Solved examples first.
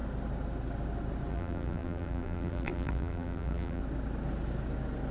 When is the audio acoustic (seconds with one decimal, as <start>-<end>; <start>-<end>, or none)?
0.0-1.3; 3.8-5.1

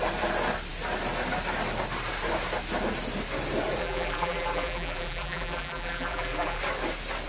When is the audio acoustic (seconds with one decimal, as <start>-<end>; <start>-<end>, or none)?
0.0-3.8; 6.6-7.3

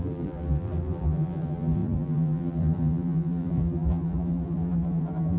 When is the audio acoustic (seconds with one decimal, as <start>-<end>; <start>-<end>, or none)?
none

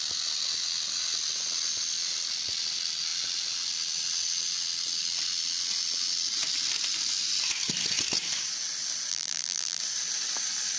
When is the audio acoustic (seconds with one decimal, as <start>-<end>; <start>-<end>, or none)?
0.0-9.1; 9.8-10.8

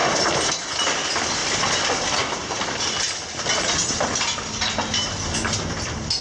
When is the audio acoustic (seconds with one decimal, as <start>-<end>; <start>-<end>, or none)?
0.5-1.4; 2.8-6.2

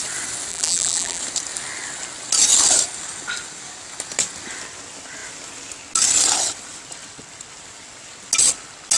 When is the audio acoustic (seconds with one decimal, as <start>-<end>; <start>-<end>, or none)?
0.0-0.5; 1.2-9.0